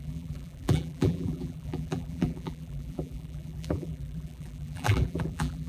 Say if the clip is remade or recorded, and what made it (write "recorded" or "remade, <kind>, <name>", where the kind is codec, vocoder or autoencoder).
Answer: remade, vocoder, BigVGAN v2